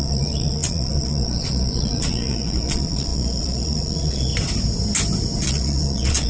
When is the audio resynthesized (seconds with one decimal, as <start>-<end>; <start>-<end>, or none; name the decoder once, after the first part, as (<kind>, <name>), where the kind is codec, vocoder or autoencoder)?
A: 0.0-4.3 (vocoder, Vocos); 5.4-6.3